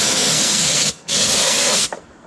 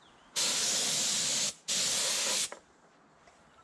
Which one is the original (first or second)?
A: second